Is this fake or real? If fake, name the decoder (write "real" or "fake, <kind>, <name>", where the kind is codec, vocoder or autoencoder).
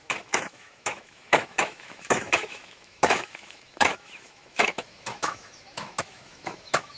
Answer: fake, autoencoder, DAC-VAE